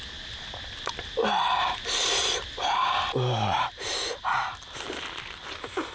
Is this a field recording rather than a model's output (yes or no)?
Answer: yes